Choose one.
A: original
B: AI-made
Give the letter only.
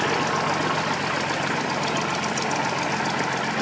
A